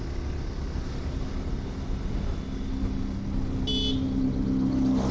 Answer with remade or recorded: recorded